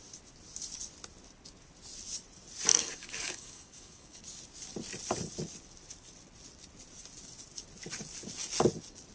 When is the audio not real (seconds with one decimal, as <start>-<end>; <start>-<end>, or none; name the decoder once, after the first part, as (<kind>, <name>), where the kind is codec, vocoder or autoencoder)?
2.7-4.2 (codec, DAC)